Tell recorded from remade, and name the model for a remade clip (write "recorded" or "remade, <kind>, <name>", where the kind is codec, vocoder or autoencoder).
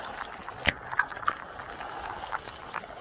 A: recorded